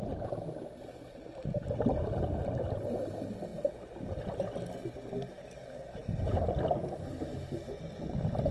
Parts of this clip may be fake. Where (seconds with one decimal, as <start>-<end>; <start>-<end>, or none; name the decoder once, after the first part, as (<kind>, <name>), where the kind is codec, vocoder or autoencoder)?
1.9-3.1 (vocoder, BigVGAN v2)